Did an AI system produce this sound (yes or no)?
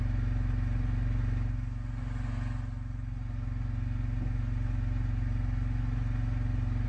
no